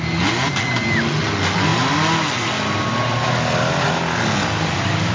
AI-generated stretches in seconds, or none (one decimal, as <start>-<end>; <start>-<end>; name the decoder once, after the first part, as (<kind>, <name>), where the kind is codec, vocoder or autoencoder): 4.4-5.1 (codec, DAC)